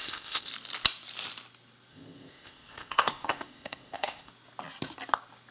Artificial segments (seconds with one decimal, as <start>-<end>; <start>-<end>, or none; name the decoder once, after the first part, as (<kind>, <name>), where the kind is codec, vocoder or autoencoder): 0.0-0.5 (codec, ZipCodec); 1.9-4.3